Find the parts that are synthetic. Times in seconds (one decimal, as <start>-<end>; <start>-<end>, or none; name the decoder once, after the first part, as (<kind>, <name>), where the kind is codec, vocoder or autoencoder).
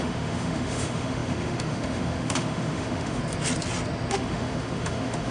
0.0-3.2 (autoencoder, DAC-VAE); 4.1-5.3